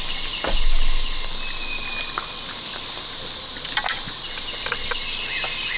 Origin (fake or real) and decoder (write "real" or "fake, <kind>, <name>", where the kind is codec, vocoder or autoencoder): real